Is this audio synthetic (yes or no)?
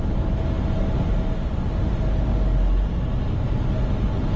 no